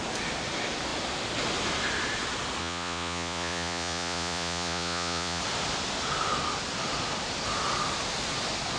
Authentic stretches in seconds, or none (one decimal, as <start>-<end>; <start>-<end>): 0.0-2.6; 5.4-8.8